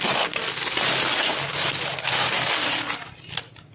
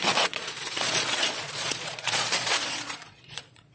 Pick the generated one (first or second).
second